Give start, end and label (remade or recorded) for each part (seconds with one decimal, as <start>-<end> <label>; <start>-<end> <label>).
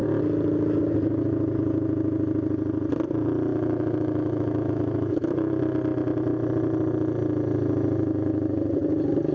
0.0-3.5 recorded; 3.5-5.6 remade; 5.6-9.3 recorded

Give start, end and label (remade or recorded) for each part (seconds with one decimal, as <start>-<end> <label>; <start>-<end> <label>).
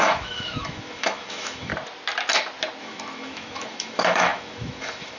0.0-1.7 remade; 1.7-2.8 recorded; 2.8-5.2 remade